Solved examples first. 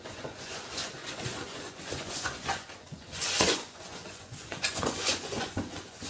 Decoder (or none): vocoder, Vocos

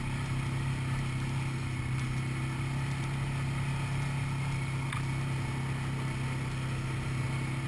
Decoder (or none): none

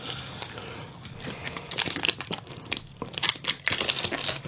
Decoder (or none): none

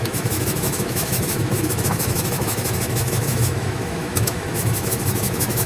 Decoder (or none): autoencoder, DAC-VAE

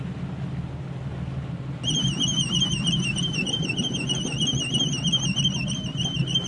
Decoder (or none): none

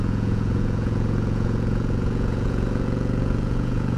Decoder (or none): vocoder, Vocos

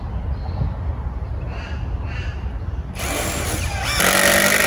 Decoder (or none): none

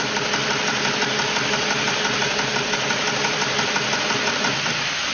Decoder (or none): none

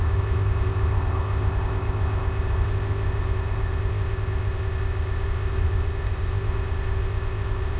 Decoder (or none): codec, ZipCodec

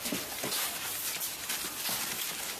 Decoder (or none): none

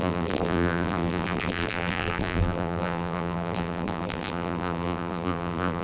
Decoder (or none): vocoder, BigVGAN v2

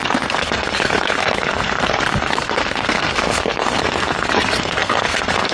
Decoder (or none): codec, SNAC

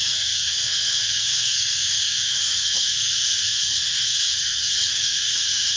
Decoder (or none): codec, SNAC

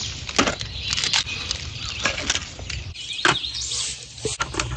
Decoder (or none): none